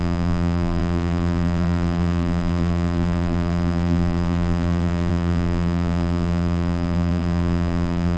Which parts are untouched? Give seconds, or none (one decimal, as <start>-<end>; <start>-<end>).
none